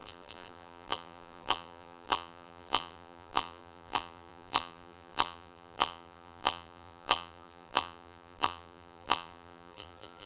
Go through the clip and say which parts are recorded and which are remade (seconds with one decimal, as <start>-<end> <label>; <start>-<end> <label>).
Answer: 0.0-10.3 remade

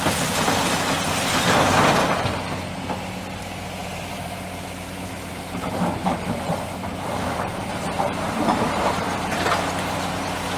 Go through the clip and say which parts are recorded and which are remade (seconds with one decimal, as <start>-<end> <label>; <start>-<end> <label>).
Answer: 0.0-3.8 recorded; 3.8-6.7 remade; 6.7-7.7 recorded; 7.7-9.7 remade; 9.7-10.6 recorded

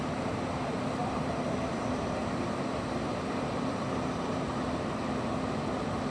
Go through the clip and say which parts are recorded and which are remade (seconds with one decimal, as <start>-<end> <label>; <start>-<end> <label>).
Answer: 0.0-1.0 recorded; 1.0-4.7 remade; 4.7-6.1 recorded